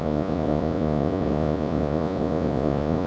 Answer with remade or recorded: remade